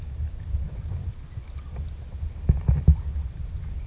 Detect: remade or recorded recorded